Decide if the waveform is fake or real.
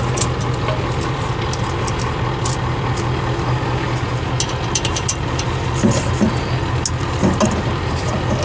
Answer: real